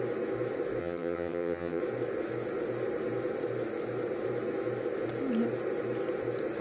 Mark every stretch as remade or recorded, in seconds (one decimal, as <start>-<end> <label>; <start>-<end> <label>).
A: 0.0-0.8 recorded; 0.8-1.8 remade; 1.8-6.6 recorded